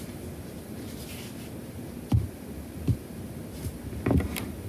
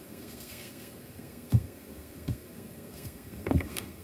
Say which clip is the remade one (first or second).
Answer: second